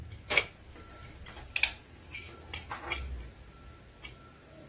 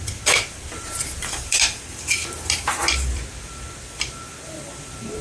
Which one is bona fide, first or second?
first